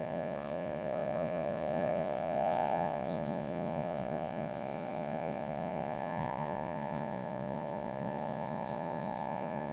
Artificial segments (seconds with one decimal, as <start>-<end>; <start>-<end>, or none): 0.0-9.7